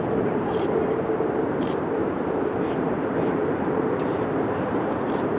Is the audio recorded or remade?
remade